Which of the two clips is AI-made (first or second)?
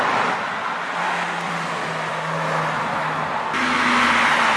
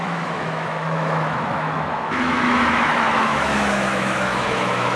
second